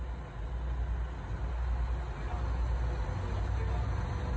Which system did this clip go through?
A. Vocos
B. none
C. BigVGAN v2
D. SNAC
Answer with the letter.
B